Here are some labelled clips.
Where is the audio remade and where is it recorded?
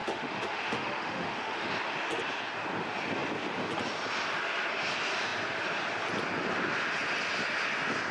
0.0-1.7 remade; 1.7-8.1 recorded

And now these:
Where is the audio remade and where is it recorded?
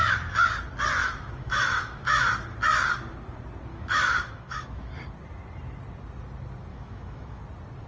0.0-1.0 recorded; 1.0-2.3 remade; 2.3-3.7 recorded; 3.7-4.9 remade; 4.9-6.7 recorded; 6.7-7.4 remade; 7.4-7.9 recorded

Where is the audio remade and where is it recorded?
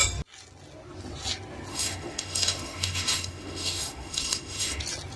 0.0-1.7 recorded; 1.7-4.8 remade; 4.8-5.2 recorded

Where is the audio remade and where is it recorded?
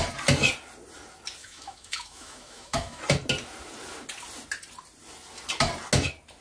0.0-1.4 recorded; 1.4-3.0 remade; 3.0-6.4 recorded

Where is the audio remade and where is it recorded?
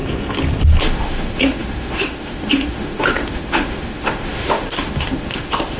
0.0-0.8 recorded; 0.8-5.8 remade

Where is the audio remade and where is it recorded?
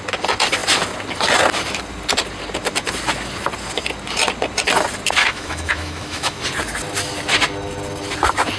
0.0-5.2 recorded; 5.2-6.4 remade; 6.4-8.6 recorded